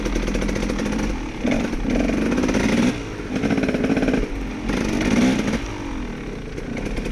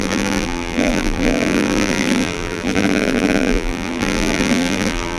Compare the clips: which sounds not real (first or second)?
second